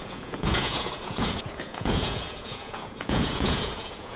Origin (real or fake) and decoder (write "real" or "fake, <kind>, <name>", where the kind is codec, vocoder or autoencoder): fake, vocoder, Vocos